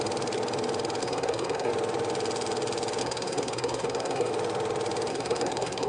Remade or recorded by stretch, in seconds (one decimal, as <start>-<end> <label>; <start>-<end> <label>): 0.0-1.0 recorded; 1.0-1.7 remade; 1.7-3.0 recorded; 3.0-4.3 remade; 4.3-5.1 recorded; 5.1-5.9 remade